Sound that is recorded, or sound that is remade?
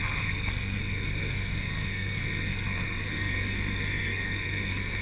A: remade